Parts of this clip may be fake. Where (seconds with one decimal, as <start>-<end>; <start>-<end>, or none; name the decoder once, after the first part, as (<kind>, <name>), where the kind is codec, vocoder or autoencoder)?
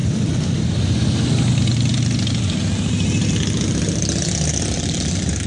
none